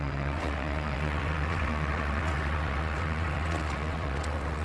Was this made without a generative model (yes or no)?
no